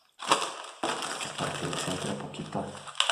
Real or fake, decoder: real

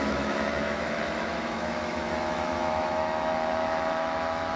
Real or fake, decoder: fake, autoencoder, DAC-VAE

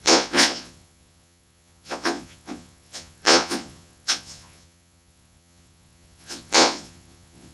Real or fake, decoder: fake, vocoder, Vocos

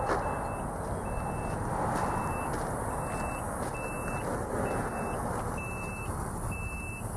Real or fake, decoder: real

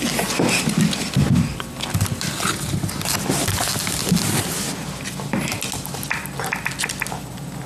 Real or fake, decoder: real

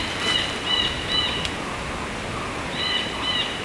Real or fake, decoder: real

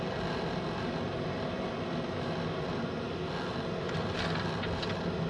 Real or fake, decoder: real